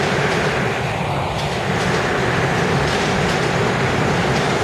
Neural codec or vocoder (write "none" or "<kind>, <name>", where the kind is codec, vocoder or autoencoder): none